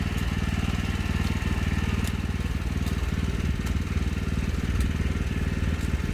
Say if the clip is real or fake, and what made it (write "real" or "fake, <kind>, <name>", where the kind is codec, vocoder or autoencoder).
real